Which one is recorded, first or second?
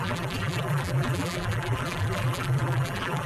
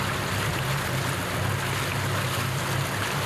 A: second